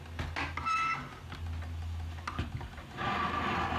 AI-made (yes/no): no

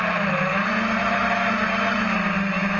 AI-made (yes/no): no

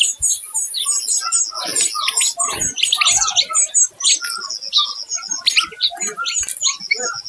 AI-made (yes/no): no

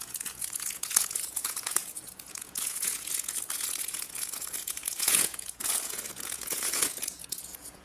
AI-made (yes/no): yes